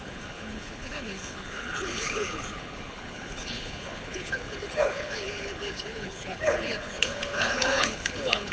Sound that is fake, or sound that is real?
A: fake